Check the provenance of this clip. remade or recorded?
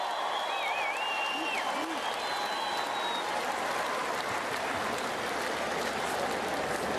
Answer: recorded